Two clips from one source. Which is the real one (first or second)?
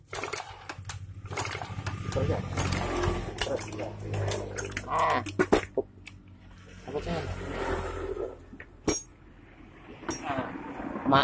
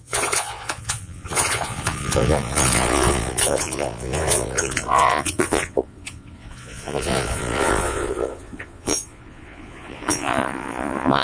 first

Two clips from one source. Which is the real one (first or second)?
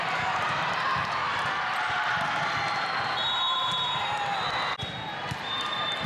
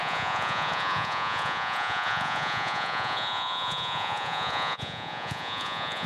first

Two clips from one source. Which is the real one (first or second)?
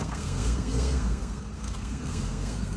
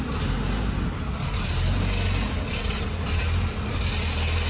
second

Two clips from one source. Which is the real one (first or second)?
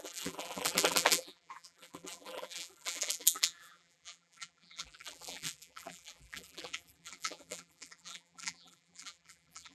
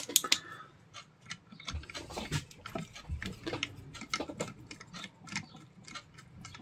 second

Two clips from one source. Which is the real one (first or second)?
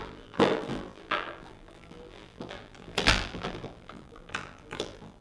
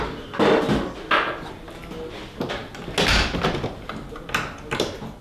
second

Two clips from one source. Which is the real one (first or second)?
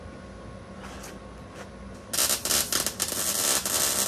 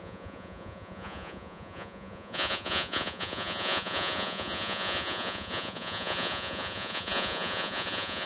first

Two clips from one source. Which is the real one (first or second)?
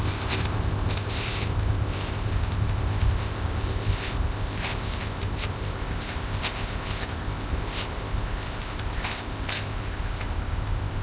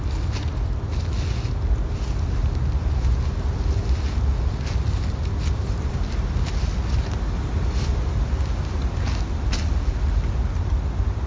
second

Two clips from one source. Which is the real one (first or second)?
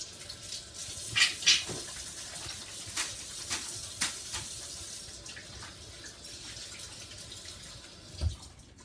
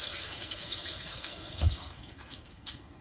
first